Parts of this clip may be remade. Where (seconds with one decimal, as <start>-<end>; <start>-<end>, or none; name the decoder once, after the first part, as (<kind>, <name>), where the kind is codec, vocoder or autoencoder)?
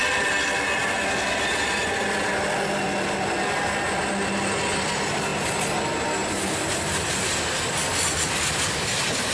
none